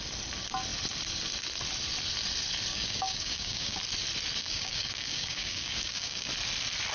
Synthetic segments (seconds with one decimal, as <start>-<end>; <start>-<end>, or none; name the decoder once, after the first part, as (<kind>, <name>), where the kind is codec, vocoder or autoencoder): 2.7-3.8 (codec, DAC); 4.4-6.3

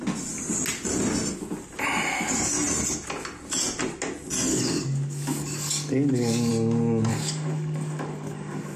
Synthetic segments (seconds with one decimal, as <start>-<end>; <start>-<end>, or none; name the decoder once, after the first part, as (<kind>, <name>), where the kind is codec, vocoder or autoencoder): 4.5-6.5 (codec, DAC); 7.1-8.8

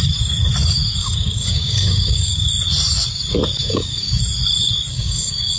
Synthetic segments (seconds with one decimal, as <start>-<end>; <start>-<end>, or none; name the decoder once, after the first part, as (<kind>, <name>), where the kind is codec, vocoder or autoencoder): 1.0-2.5 (codec, DAC); 3.6-4.2; 4.9-5.6

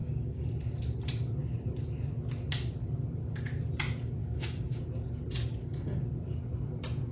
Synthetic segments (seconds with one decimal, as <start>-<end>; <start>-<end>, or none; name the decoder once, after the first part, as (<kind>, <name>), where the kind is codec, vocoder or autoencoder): 0.0-0.5 (codec, DAC); 4.2-4.8

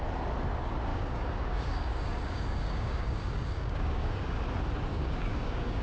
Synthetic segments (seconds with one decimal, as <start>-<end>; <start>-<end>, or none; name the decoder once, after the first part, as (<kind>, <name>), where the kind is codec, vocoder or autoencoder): 0.9-4.4 (codec, DAC); 4.9-5.8